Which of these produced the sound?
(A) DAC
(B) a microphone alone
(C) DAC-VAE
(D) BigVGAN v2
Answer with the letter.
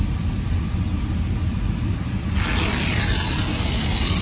B